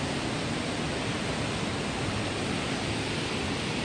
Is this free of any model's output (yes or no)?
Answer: yes